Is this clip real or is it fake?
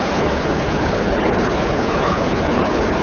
fake